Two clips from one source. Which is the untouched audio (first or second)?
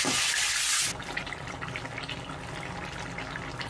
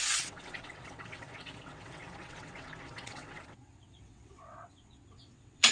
first